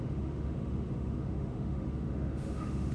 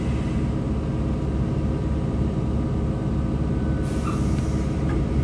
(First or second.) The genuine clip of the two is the second